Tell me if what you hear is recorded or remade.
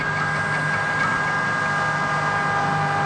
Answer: recorded